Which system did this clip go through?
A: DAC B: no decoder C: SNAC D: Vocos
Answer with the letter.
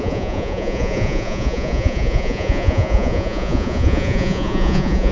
D